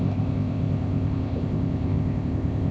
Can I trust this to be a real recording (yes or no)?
no